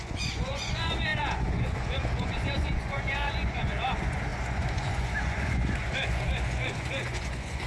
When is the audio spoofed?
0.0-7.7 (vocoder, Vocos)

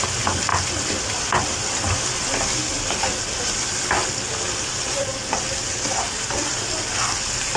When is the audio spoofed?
none